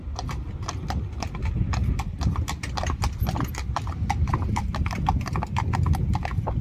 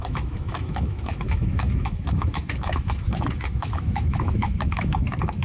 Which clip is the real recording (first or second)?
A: first